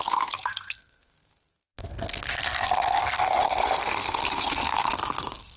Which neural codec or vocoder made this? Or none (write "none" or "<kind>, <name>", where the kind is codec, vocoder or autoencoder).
codec, SNAC